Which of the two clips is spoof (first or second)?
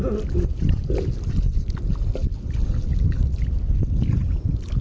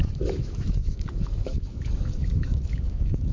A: second